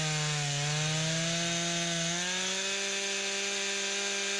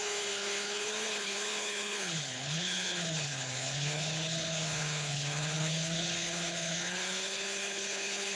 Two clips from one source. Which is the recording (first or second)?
first